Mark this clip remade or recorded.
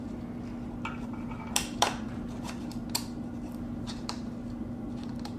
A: recorded